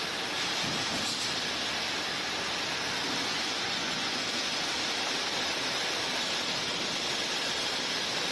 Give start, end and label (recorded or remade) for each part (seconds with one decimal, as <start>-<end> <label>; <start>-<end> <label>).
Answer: 0.0-3.3 recorded; 3.3-4.7 remade; 4.7-8.3 recorded